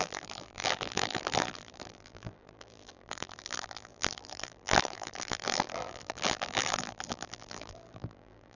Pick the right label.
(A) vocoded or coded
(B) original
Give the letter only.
A